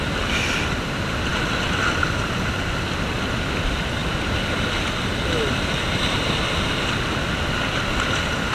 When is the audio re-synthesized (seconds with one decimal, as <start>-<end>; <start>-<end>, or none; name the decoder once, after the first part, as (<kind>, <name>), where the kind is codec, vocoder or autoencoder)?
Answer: none

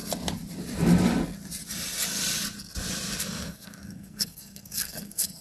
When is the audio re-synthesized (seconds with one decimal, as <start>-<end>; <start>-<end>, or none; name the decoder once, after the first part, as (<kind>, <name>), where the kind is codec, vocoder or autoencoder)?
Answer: 3.2-5.4 (codec, SNAC)